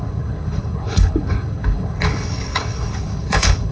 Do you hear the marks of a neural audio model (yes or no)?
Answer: yes